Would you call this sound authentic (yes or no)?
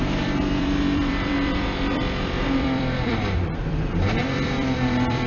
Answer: no